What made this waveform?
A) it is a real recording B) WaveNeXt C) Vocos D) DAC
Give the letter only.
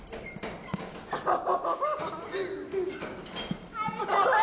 A